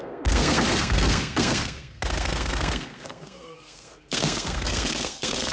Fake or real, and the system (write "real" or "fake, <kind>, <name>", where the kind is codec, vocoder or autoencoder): fake, codec, SNAC